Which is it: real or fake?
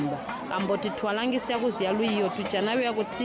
real